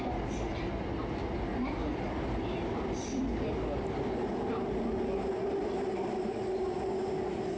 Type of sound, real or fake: real